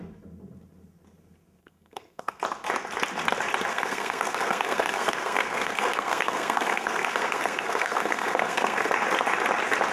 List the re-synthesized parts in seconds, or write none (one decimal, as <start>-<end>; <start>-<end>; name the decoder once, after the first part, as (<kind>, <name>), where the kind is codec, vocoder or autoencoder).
1.6-2.4 (codec, SNAC); 3.7-8.9